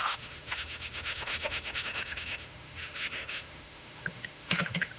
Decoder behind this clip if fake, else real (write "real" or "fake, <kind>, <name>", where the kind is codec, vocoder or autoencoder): fake, autoencoder, DAC-VAE